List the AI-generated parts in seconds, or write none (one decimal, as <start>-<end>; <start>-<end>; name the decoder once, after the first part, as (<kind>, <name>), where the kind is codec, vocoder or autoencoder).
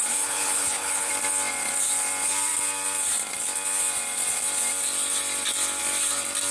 0.0-1.1 (codec, HILCodec)